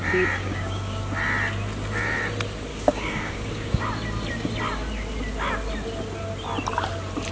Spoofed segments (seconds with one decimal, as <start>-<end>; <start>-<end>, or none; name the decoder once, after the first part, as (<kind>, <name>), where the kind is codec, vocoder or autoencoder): 0.4-1.0 (codec, DAC); 2.7-3.8